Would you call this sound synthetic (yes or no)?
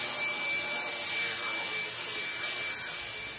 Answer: no